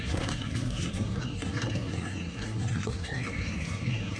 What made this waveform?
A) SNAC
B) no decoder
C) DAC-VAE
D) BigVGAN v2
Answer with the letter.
A